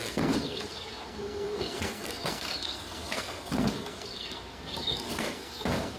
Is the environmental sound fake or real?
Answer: fake